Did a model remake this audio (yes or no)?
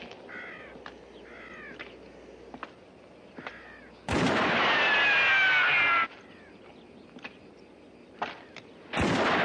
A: no